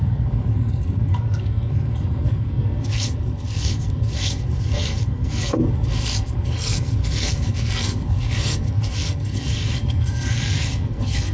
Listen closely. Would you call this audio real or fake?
fake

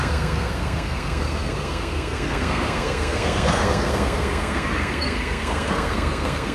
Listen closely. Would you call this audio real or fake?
fake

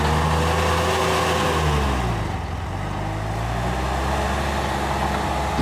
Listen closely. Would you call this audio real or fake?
real